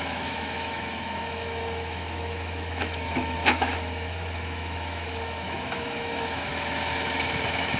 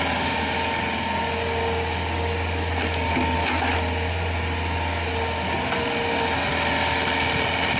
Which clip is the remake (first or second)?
first